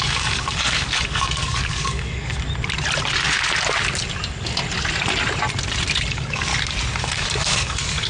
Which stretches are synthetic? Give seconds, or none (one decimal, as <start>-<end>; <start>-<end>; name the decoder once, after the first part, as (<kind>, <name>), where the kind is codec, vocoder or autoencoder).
0.0-2.3 (codec, DAC); 6.1-6.5; 7.0-8.1